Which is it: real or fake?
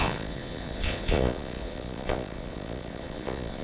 fake